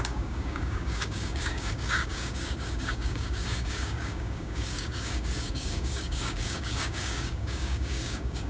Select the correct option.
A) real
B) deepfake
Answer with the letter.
B